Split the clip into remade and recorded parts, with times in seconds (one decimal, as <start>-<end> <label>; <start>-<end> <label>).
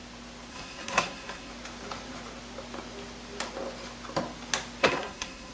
0.0-0.5 recorded; 0.5-1.5 remade; 1.5-4.8 recorded; 4.8-5.5 remade